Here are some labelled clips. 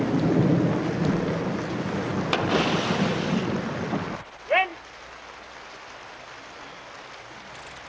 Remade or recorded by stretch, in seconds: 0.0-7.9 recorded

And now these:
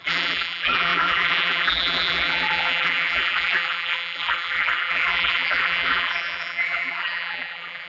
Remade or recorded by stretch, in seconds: 0.0-7.9 remade